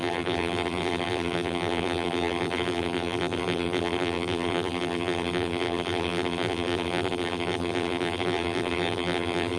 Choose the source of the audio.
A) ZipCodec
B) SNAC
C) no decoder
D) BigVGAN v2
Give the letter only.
D